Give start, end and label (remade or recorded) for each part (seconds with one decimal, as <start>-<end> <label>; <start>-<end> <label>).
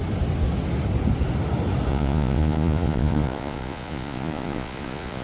0.0-1.9 recorded; 1.9-5.2 remade